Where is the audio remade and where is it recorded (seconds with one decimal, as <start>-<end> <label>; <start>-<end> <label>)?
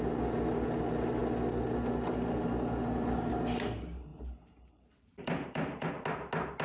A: 0.0-4.1 recorded; 4.1-5.9 remade; 5.9-6.6 recorded